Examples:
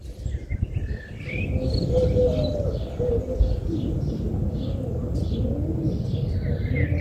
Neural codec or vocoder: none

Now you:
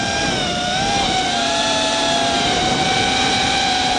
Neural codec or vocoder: vocoder, BigVGAN v2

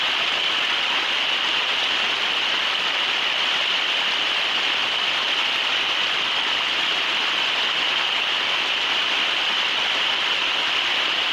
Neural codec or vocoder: none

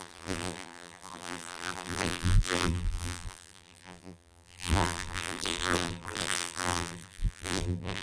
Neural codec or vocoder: vocoder, BigVGAN v2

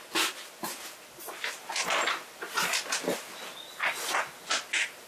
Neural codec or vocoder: none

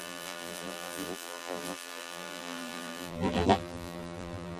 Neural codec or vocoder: vocoder, BigVGAN v2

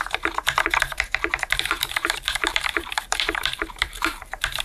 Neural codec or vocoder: vocoder, BigVGAN v2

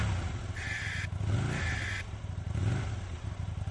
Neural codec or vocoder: none